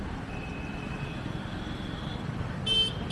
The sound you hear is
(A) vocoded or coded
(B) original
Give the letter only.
B